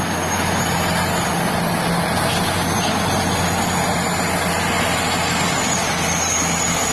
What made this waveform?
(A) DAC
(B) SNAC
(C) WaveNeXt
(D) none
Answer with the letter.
D